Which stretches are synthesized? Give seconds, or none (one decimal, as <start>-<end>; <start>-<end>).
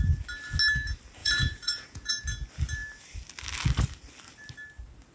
1.2-2.2